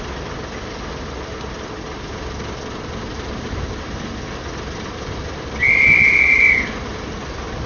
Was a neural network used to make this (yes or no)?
no